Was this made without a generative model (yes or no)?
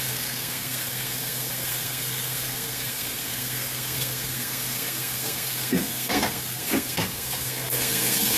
no